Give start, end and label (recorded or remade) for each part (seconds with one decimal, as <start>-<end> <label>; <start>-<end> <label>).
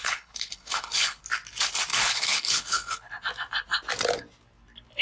0.0-1.2 remade; 1.2-1.9 recorded; 1.9-3.1 remade; 3.1-5.0 recorded